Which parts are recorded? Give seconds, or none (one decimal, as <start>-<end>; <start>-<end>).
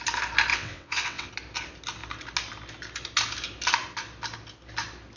0.0-0.5; 1.3-5.2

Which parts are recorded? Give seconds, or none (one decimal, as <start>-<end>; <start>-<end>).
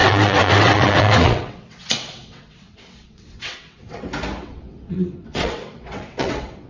4.0-4.4